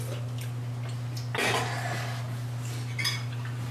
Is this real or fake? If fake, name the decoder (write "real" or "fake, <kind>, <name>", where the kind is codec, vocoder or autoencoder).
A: real